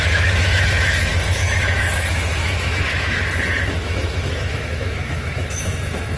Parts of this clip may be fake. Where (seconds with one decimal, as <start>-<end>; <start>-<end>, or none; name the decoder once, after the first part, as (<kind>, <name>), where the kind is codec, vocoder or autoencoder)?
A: 0.0-6.2 (autoencoder, DAC-VAE)